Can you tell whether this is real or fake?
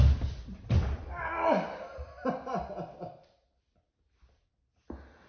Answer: real